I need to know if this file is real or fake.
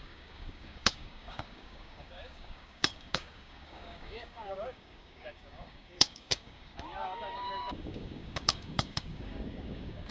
fake